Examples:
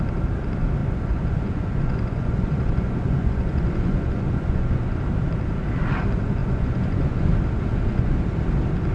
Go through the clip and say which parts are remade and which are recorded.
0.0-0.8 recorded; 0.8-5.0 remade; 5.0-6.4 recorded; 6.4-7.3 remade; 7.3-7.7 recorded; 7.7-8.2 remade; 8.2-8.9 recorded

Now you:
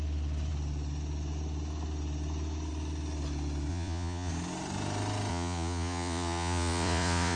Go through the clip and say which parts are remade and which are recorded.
0.0-3.7 recorded; 3.7-4.3 remade; 4.3-5.3 recorded; 5.3-7.4 remade

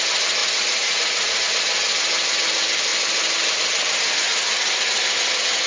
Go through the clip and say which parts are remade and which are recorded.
0.0-0.4 recorded; 0.4-1.5 remade; 1.5-5.7 recorded

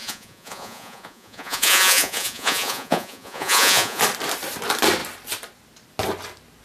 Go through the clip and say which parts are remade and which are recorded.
0.0-4.0 remade; 4.0-6.6 recorded